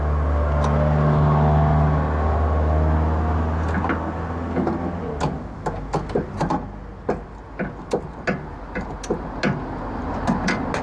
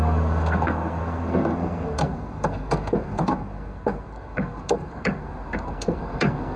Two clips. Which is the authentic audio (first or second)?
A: first